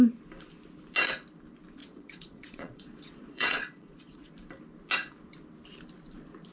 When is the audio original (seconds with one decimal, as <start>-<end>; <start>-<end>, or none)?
0.0-1.8; 4.3-6.5